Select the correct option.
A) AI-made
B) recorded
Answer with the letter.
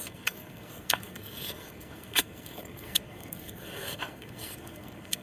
A